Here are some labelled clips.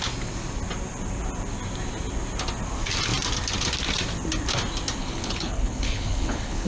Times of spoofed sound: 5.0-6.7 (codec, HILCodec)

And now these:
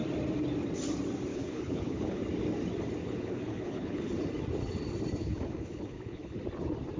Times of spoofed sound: 1.3-2.2 (codec, HILCodec); 3.0-4.1; 5.2-6.4

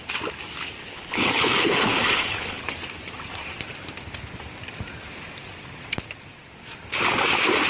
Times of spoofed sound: 0.8-2.6 (codec, HILCodec)

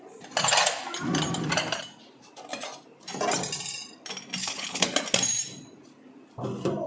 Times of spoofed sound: 4.4-4.9 (codec, HILCodec)

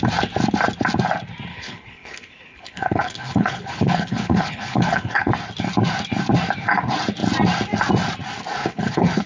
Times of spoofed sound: 1.5-5.3 (codec, HILCodec); 8.6-9.3

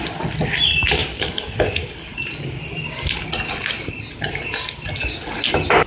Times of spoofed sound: none

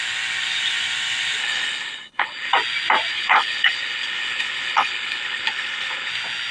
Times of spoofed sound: 1.4-2.5 (codec, HILCodec); 3.1-6.1